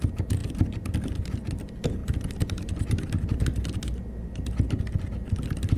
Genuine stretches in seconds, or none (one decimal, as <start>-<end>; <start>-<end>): 0.0-5.8

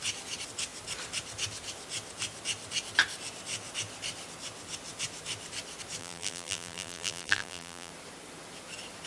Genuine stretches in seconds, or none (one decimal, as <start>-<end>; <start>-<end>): 0.0-6.0; 7.9-9.1

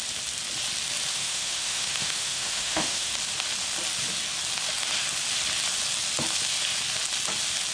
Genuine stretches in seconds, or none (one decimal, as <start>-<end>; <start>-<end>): 0.0-1.1; 3.1-7.7